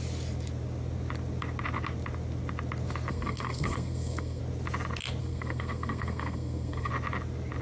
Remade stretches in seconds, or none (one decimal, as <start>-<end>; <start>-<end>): 3.1-4.4; 5.2-6.9